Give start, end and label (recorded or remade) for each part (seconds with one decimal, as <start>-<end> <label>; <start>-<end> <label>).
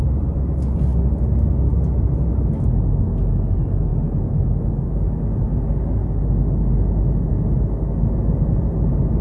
0.0-9.2 recorded